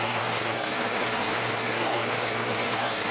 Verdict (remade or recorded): remade